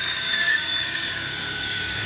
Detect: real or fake fake